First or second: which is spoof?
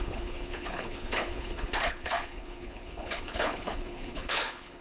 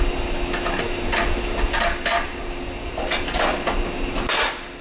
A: first